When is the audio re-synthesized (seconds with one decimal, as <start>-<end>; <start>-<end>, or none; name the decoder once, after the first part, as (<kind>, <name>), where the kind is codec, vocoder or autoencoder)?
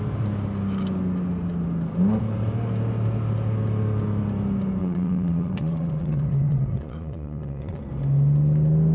4.8-7.8 (vocoder, Vocos)